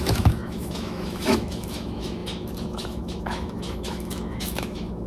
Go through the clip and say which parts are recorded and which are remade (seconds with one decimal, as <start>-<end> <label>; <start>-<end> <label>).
0.0-5.1 remade